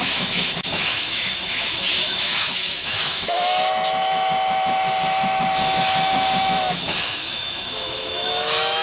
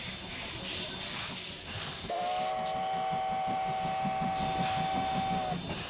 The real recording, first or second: second